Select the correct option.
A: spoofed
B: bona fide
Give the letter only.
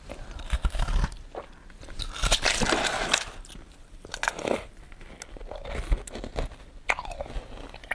B